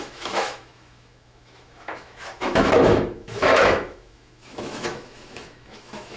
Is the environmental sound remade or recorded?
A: remade